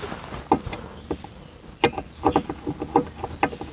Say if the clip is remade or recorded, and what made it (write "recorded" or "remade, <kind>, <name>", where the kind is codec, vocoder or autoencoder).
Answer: recorded